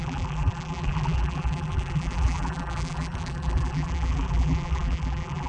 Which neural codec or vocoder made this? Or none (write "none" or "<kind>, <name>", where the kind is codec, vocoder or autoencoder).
vocoder, BigVGAN v2